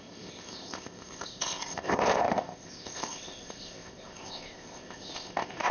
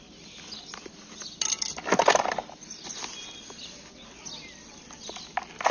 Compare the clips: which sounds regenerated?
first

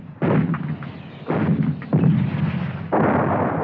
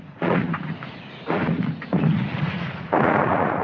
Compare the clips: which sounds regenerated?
second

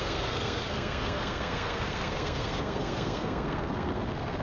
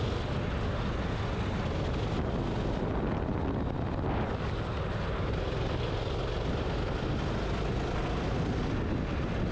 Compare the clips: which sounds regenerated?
first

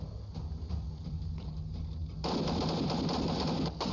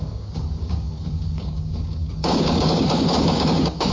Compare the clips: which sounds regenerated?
second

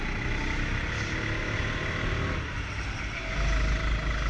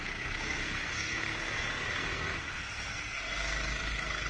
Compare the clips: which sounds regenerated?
second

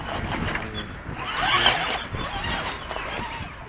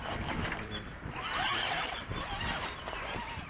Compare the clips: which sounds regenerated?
second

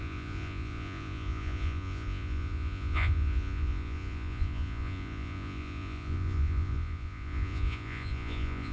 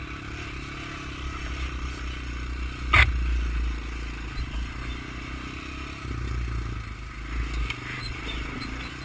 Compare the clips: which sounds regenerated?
first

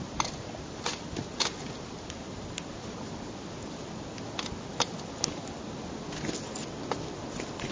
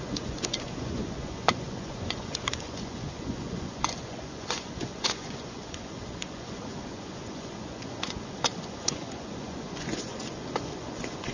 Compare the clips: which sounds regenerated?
second